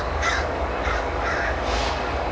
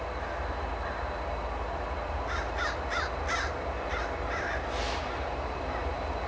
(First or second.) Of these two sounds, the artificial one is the first